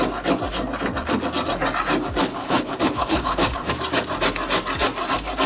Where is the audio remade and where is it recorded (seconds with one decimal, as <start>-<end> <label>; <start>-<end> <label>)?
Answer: 0.0-2.4 recorded; 2.4-3.7 remade; 3.7-5.5 recorded

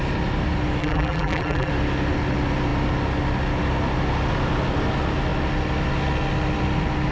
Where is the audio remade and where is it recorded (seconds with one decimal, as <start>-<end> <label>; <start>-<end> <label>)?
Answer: 0.0-0.8 recorded; 0.8-1.7 remade; 1.7-7.1 recorded

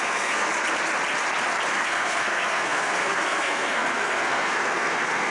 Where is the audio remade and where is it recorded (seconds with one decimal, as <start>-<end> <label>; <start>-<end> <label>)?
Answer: 0.0-0.5 remade; 0.5-1.7 recorded; 1.7-5.3 remade

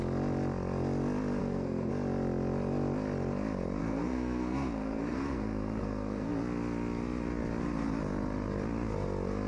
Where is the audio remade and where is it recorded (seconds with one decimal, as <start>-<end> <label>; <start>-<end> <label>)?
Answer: 0.0-1.4 recorded; 1.4-1.9 remade; 1.9-3.8 recorded; 3.8-6.3 remade; 6.3-9.5 recorded